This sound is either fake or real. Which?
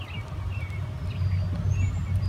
real